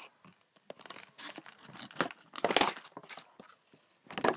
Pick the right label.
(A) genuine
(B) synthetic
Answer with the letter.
A